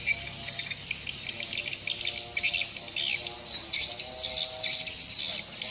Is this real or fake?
real